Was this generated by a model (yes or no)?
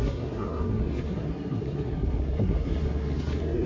yes